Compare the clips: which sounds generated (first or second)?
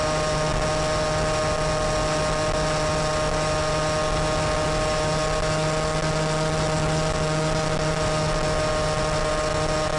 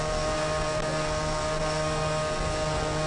second